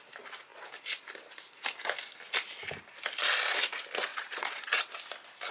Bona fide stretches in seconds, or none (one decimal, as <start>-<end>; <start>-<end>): 0.0-4.1; 4.8-5.5